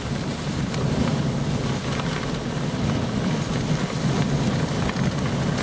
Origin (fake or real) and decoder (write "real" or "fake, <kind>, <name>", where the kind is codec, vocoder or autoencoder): real